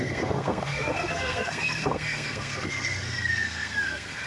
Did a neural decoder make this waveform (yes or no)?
yes